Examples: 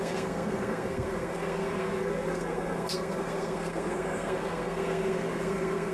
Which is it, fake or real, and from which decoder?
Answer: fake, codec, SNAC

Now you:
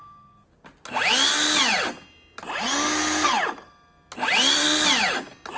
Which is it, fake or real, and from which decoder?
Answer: real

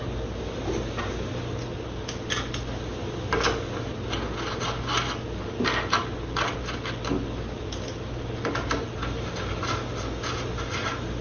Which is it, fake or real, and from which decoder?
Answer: real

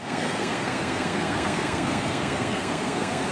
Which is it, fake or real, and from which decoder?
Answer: fake, codec, SNAC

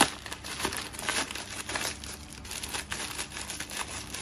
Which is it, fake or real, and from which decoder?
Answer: real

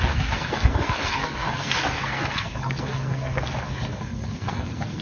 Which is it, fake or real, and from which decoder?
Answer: fake, codec, SNAC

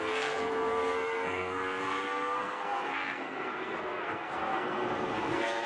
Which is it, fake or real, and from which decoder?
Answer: fake, codec, SNAC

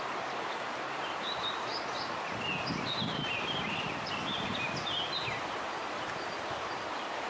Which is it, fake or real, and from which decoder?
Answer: real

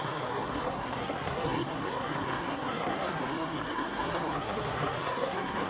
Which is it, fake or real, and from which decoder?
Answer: fake, codec, SNAC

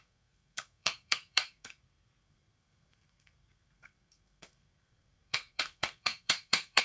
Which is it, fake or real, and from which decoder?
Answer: fake, codec, SNAC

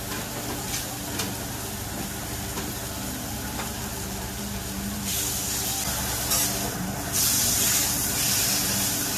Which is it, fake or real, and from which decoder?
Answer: real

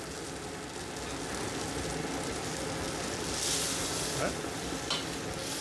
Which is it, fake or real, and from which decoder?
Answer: real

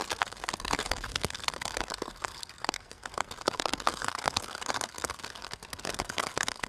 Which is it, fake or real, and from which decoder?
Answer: fake, codec, SNAC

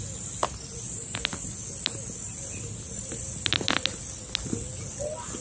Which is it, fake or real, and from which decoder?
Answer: real